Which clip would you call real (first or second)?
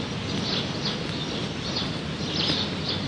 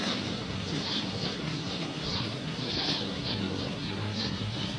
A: first